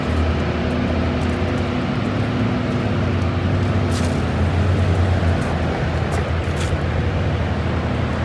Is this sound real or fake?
real